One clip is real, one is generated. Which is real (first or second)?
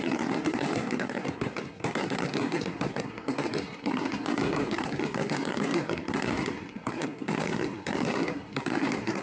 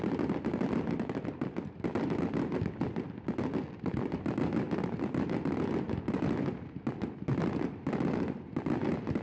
second